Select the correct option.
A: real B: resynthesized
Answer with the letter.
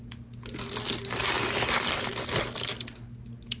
A